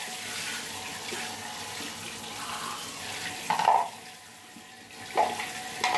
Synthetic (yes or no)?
no